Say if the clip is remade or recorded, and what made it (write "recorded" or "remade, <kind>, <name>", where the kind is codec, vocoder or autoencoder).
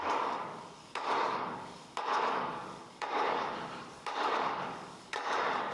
remade, codec, DAC